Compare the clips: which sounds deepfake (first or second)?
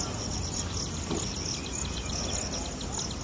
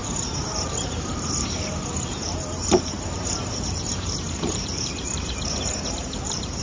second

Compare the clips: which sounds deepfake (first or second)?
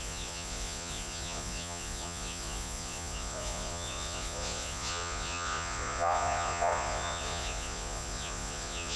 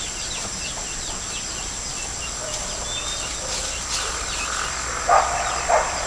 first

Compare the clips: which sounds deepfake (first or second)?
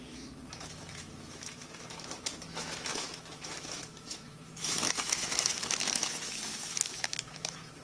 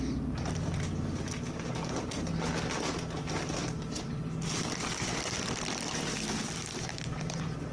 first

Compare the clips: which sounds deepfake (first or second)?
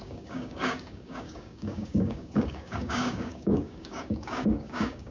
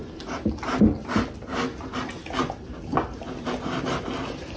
first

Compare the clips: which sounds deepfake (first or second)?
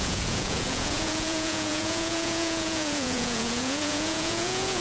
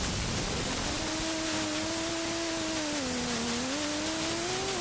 first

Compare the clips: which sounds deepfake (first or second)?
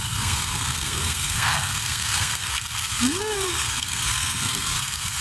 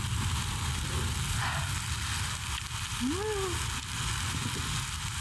first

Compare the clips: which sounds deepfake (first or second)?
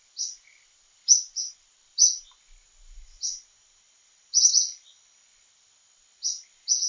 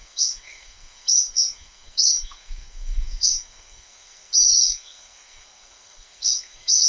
second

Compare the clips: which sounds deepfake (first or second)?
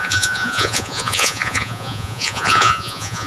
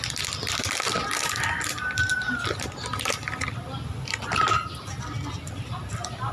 first